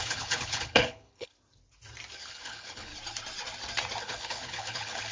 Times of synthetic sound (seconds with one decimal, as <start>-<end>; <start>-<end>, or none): 0.0-1.3; 2.2-2.9; 4.0-5.1